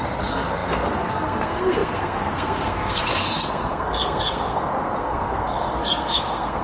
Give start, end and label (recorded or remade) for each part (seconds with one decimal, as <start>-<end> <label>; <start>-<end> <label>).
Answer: 0.0-6.6 remade